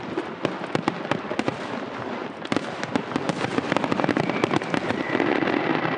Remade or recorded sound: recorded